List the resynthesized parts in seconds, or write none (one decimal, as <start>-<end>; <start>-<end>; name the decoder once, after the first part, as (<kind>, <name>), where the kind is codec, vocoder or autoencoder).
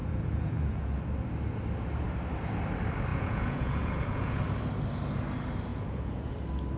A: 0.0-1.0 (vocoder, Vocos); 3.1-4.4; 5.7-6.3